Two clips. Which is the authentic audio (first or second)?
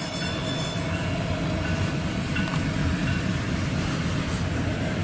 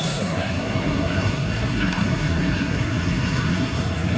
first